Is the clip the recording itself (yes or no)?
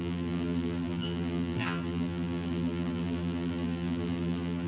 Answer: no